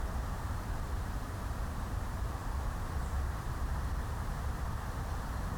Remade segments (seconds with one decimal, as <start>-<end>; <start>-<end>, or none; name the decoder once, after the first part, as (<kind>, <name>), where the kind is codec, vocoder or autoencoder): 0.0-5.6 (vocoder, BigVGAN v2)